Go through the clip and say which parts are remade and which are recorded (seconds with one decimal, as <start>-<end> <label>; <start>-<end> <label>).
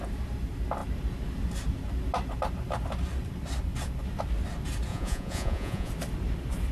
0.0-4.9 recorded; 4.9-5.9 remade; 5.9-6.7 recorded